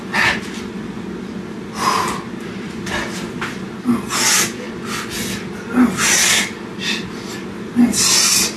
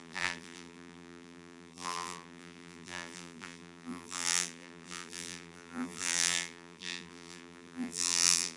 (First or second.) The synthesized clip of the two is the second